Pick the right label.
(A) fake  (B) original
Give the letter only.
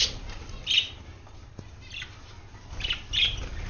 B